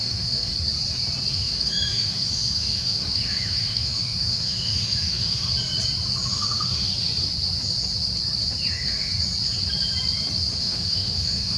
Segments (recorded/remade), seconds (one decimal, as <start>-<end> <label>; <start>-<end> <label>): 0.0-0.5 remade; 0.5-1.3 recorded; 1.3-5.5 remade; 5.5-6.3 recorded; 6.3-6.9 remade; 6.9-8.7 recorded; 8.7-9.1 remade; 9.1-10.6 recorded; 10.6-11.6 remade

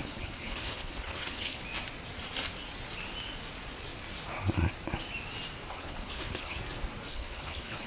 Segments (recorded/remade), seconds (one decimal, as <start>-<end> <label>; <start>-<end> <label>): 0.0-1.6 remade; 1.6-5.7 recorded; 5.7-6.6 remade; 6.6-7.1 recorded; 7.1-7.9 remade

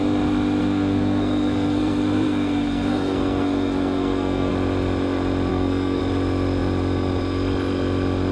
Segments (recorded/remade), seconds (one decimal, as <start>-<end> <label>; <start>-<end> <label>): 0.0-0.6 recorded; 0.6-4.5 remade; 4.5-5.5 recorded; 5.5-6.0 remade; 6.0-8.3 recorded